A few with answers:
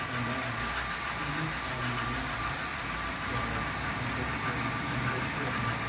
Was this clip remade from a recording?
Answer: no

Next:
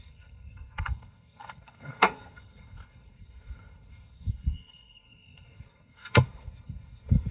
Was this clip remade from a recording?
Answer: yes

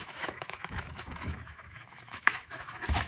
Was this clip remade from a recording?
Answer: yes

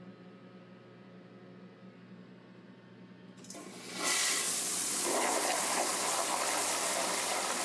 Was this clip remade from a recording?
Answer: no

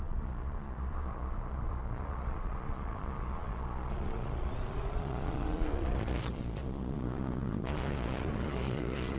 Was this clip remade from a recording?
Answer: yes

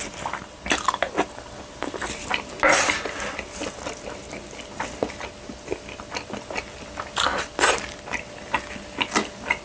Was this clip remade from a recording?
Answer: no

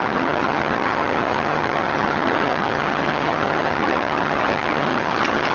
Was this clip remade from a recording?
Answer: yes